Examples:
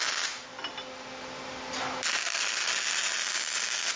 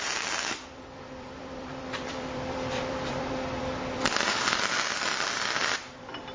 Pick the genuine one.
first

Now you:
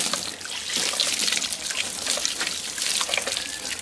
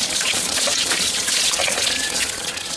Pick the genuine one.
first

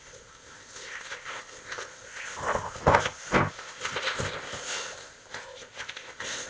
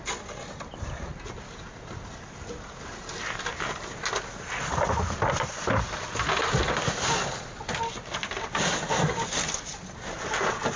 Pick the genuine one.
second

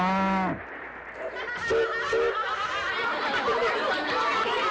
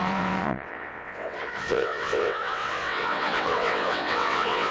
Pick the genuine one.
first